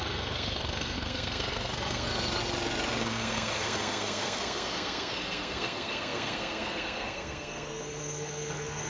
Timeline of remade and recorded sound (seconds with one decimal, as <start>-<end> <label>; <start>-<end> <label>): 0.0-2.1 remade; 2.1-3.0 recorded; 3.0-8.9 remade